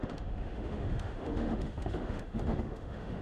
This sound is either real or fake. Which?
fake